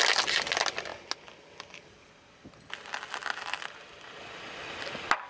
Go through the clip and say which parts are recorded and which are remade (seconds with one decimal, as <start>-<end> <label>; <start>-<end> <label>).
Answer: 0.0-5.3 recorded